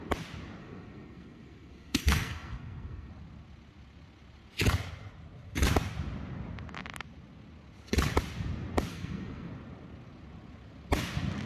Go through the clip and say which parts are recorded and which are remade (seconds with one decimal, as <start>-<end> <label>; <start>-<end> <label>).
0.0-0.6 recorded; 0.6-3.1 remade; 3.1-8.9 recorded; 8.9-9.5 remade; 9.5-11.5 recorded